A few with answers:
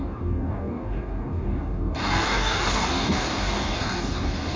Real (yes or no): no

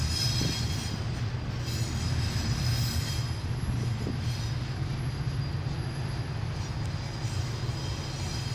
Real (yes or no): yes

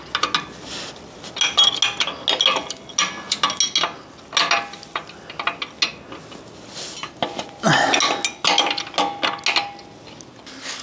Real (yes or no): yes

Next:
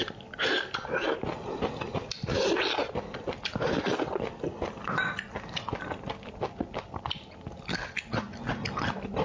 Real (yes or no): yes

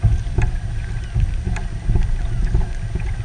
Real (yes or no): yes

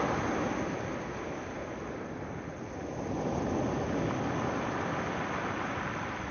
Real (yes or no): yes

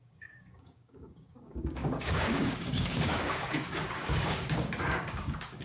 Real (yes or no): no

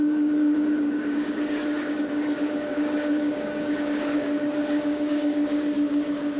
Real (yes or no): no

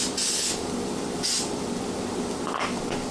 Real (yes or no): yes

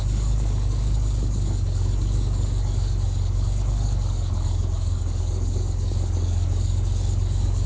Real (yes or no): no